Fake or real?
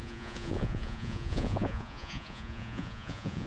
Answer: fake